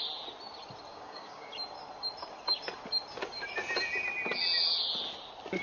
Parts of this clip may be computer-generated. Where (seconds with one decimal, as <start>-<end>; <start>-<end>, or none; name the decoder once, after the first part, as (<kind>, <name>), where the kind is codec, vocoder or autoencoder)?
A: 0.9-1.5 (codec, DAC)